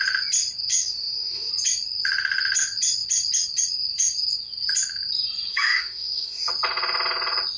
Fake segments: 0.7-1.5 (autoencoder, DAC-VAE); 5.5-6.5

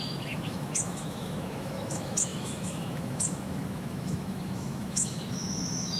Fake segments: 0.0-6.0 (autoencoder, DAC-VAE)